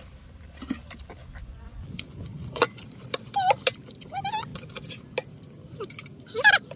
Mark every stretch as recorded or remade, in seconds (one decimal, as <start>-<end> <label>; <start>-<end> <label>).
0.0-1.4 recorded; 1.4-2.8 remade; 2.8-6.8 recorded